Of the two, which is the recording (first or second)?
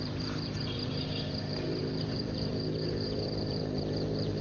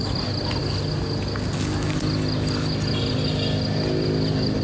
second